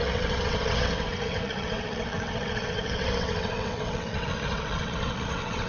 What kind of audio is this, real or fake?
fake